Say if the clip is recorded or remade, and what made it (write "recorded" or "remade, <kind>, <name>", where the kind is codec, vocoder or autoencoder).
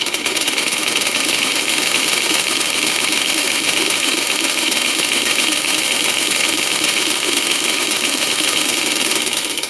remade, autoencoder, DAC-VAE